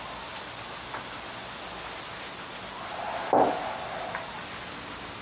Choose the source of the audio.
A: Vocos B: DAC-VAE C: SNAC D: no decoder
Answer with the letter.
D